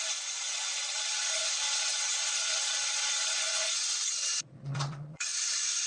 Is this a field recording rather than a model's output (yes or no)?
no